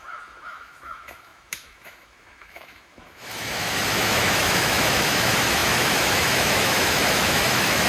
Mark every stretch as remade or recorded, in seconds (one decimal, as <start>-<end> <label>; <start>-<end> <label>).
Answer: 0.0-7.9 remade